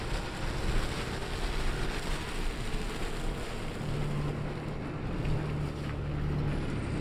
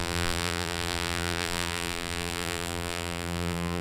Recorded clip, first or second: first